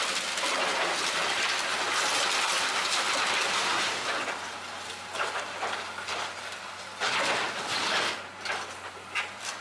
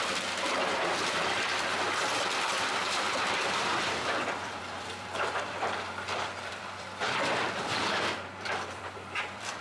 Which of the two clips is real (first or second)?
first